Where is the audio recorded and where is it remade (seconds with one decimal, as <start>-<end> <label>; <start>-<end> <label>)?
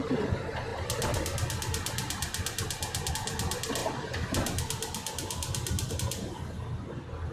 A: 0.0-7.3 recorded